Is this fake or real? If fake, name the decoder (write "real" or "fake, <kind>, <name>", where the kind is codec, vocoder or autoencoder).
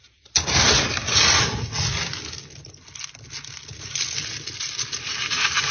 real